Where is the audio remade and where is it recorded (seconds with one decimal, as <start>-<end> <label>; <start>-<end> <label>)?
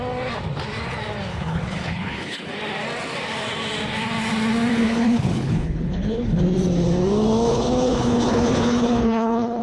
0.0-1.3 recorded; 1.3-2.5 remade; 2.5-4.7 recorded; 4.7-6.4 remade; 6.4-7.5 recorded; 7.5-9.6 remade